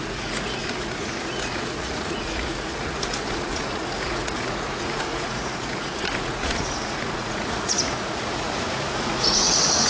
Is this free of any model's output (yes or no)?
no